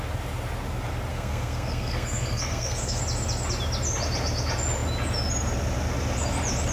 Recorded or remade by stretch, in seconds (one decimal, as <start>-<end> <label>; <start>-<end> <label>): 0.0-1.1 recorded; 1.1-3.0 remade; 3.0-6.7 recorded